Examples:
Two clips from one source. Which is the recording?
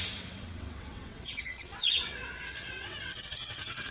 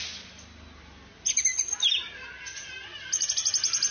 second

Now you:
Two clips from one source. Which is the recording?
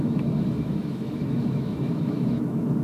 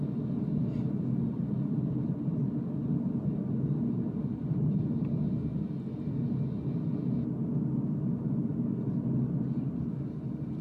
second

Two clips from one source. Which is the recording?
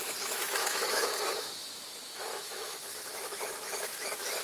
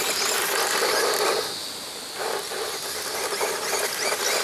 second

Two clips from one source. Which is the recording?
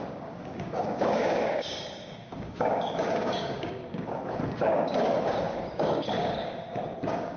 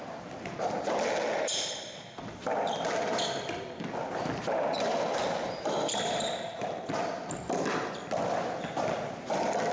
second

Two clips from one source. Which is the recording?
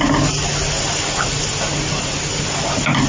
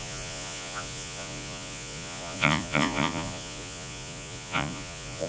first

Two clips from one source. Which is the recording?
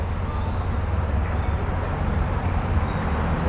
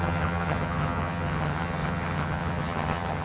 first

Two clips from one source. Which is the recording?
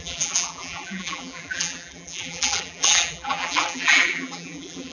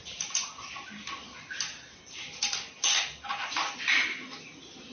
second